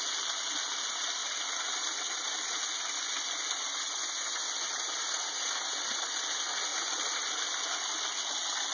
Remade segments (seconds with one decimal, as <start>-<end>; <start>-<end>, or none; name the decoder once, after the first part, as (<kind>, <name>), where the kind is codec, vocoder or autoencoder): none